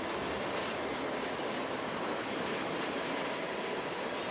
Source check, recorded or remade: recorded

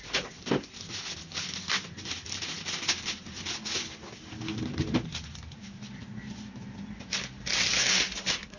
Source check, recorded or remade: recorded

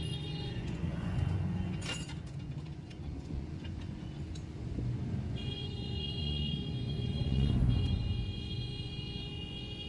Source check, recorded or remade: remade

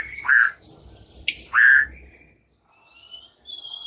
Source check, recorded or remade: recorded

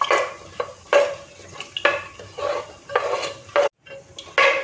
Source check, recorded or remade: recorded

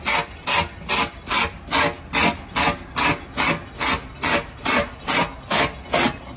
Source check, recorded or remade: recorded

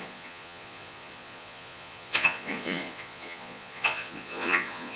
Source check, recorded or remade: remade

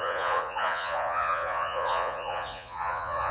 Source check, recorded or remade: remade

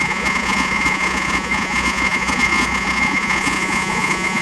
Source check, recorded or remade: remade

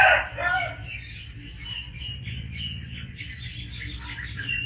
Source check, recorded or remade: recorded